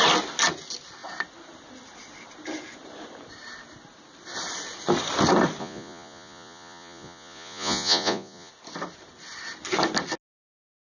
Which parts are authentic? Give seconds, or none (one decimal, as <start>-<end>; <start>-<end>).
0.0-5.6; 8.5-11.0